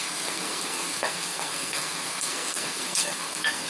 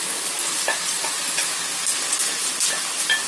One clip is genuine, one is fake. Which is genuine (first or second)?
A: second